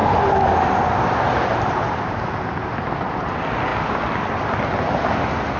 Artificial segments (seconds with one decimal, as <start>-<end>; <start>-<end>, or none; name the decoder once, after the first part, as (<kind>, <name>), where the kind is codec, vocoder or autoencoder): none